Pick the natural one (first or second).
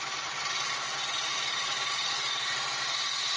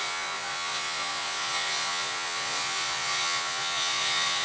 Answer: first